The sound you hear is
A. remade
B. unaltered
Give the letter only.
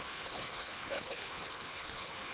A